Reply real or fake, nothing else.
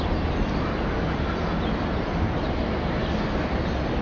real